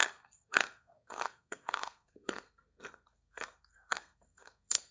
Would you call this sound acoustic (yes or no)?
no